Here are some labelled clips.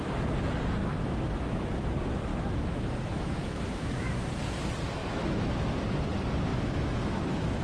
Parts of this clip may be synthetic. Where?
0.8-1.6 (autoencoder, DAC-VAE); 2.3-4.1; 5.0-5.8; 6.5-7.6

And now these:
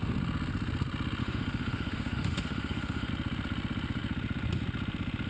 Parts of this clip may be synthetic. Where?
1.2-3.1 (autoencoder, DAC-VAE)

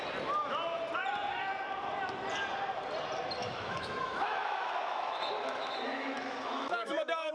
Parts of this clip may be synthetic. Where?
3.4-7.3 (autoencoder, DAC-VAE)

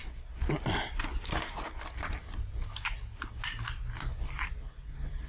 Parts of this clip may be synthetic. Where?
none

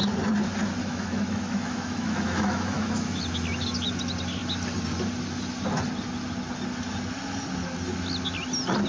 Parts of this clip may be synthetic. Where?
0.8-3.2 (autoencoder, DAC-VAE)

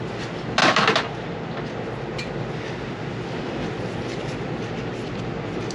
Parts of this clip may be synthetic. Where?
none

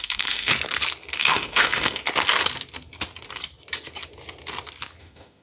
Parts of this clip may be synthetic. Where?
0.0-0.5 (autoencoder, DAC-VAE); 1.2-2.0; 5.0-5.4

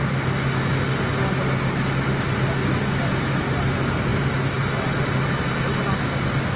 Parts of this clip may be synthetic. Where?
none